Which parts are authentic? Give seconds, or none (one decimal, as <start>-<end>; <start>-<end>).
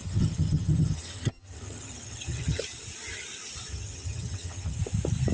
2.6-3.7; 4.8-5.3